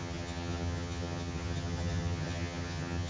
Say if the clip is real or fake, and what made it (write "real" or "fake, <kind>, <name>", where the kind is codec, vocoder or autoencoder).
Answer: fake, vocoder, HiFi-GAN